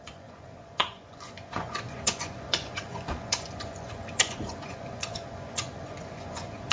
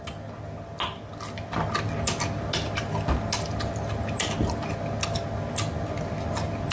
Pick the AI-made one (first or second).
first